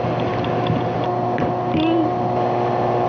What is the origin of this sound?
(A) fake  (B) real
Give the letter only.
B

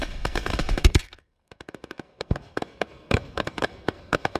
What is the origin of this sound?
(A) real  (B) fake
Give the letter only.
B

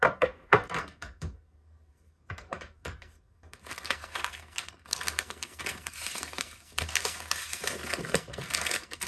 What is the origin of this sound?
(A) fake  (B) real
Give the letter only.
A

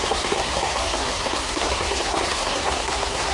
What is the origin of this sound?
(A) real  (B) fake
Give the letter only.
B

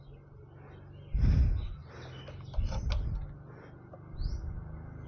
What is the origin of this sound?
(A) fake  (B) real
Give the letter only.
B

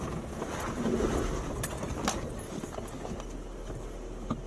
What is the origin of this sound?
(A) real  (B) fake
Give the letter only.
A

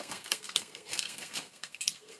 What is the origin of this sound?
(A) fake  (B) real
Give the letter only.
A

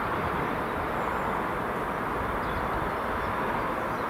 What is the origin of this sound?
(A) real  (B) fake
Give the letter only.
A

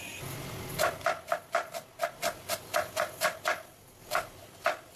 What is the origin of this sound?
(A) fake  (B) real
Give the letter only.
B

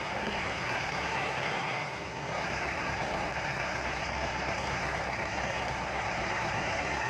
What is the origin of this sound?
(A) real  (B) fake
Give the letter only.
B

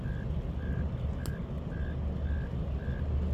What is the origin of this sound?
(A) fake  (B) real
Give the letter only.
B